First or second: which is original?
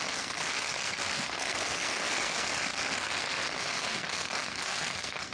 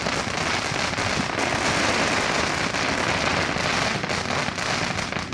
second